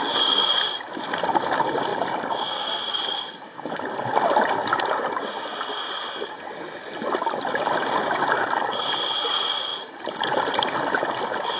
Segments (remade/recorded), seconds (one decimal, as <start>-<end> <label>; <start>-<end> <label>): 0.0-4.6 remade; 4.6-5.6 recorded; 5.6-11.6 remade